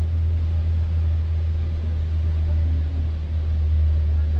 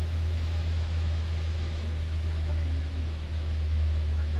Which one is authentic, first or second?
first